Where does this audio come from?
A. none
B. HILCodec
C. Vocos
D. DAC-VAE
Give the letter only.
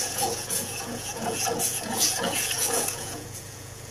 C